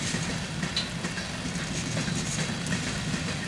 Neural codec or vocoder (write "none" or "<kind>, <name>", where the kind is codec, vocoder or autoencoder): none